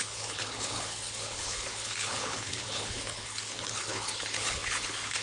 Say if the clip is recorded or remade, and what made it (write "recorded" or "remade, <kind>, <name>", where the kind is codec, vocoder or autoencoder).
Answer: remade, codec, HILCodec